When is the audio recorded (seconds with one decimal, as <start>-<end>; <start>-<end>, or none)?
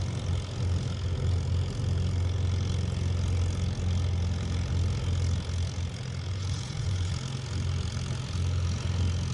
0.0-6.3; 7.1-9.3